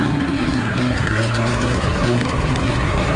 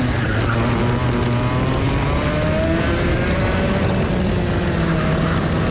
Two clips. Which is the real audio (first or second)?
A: second